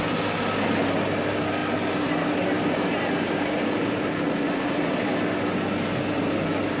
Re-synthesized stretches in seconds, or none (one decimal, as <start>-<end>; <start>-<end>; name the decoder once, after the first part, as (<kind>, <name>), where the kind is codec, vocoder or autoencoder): none